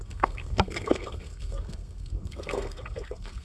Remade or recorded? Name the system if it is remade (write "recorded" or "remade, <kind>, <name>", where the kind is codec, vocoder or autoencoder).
remade, codec, SNAC